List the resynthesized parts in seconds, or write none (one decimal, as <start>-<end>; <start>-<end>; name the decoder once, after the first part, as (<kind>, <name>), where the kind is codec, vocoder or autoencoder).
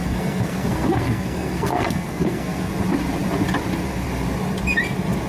0.0-2.7 (codec, SNAC)